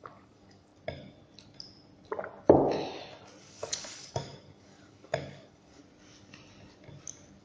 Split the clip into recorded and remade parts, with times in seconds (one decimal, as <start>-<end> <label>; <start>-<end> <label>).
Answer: 0.0-0.7 remade; 0.7-3.4 recorded; 3.4-5.8 remade; 5.8-7.4 recorded